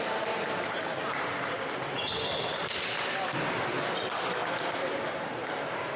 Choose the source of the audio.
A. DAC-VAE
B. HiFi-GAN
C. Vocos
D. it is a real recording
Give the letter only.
D